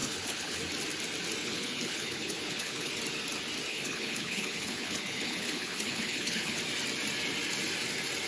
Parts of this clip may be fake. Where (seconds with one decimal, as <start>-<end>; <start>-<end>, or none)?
0.0-0.6; 1.4-2.9; 3.7-6.6